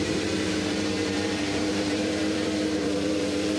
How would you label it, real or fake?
fake